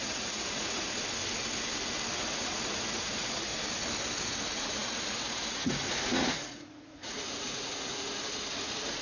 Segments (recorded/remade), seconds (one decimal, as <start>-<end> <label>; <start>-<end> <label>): 0.0-0.9 remade; 0.9-2.2 recorded; 2.2-3.5 remade; 3.5-4.2 recorded; 4.2-9.0 remade